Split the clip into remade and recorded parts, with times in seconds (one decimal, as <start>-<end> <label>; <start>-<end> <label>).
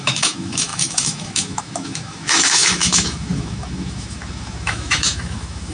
0.0-5.7 remade